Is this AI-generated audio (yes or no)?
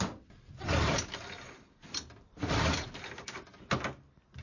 no